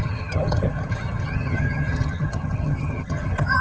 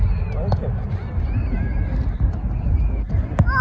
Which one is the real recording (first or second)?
second